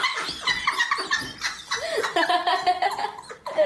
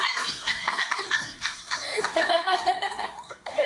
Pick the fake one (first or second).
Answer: second